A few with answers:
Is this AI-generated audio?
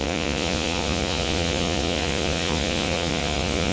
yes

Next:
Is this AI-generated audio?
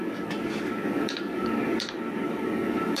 yes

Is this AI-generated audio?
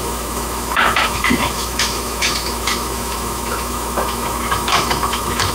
yes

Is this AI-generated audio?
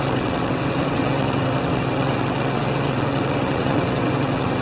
yes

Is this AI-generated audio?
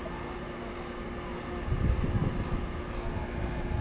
no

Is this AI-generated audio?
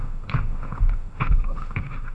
yes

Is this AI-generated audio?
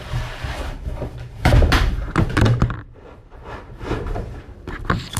yes